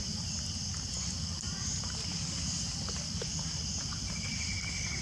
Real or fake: real